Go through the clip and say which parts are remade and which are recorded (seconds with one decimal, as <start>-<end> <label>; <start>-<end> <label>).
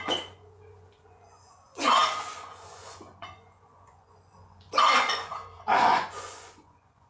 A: 0.0-7.1 remade